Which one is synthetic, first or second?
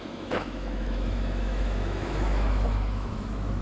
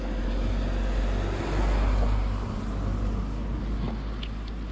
first